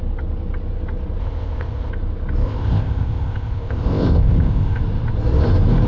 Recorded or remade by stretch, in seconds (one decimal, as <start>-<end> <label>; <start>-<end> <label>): 0.0-1.2 recorded; 1.2-1.9 remade; 1.9-2.4 recorded; 2.4-4.8 remade; 4.8-5.9 recorded